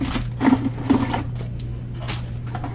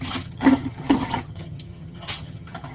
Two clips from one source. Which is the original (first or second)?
first